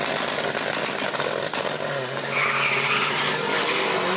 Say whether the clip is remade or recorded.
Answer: recorded